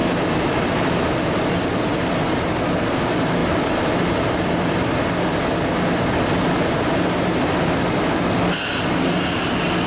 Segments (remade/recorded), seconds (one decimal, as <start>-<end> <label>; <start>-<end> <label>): 0.0-9.9 recorded